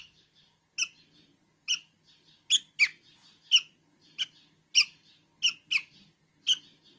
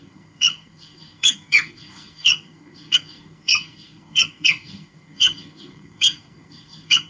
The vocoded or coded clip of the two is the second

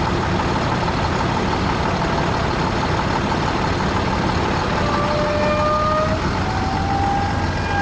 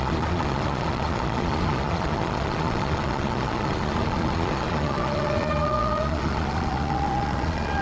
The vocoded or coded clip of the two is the second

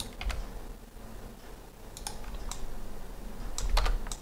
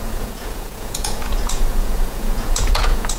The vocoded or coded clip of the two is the second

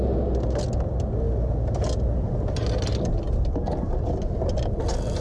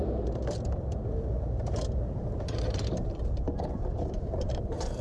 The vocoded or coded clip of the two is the second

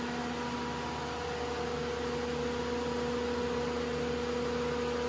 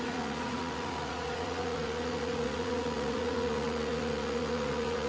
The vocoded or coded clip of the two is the second